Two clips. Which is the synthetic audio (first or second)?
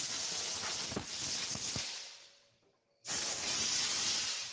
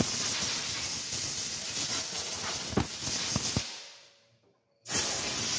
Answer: first